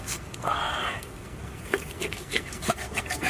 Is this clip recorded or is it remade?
remade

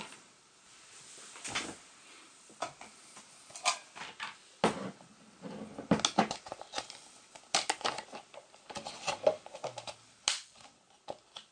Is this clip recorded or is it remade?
recorded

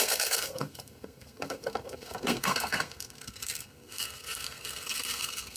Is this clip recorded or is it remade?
remade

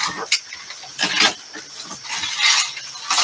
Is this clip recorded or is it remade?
recorded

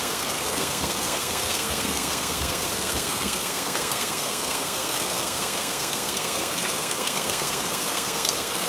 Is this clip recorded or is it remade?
remade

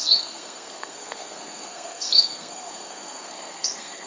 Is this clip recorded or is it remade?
remade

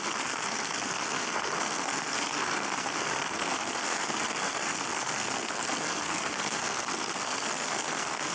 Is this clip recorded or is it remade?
remade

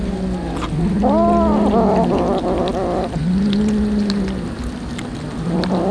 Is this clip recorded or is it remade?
recorded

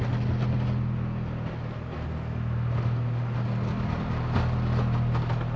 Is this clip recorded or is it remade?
recorded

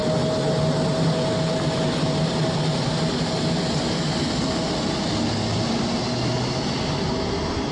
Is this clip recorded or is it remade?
recorded